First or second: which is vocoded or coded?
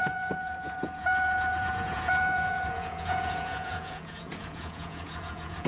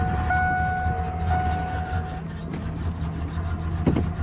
first